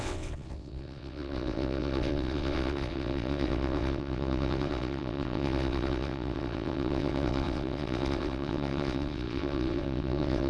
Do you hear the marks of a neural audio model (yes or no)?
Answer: yes